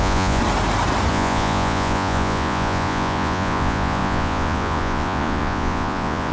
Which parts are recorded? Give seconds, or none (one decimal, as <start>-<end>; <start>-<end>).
0.4-1.1